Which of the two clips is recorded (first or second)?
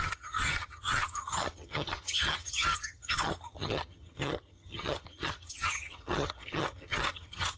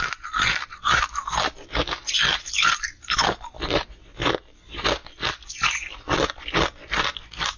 second